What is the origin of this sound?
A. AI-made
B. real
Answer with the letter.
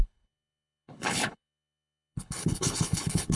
A